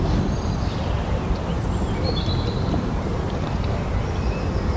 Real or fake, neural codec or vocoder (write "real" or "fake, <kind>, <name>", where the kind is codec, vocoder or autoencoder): real